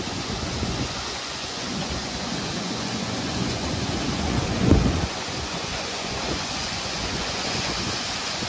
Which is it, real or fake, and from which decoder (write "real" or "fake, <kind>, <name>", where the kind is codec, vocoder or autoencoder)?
fake, vocoder, Vocos